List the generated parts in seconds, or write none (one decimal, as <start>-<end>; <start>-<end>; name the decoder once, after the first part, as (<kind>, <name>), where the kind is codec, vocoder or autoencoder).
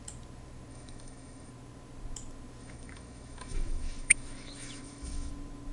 0.7-1.5 (autoencoder, DAC-VAE); 2.6-5.3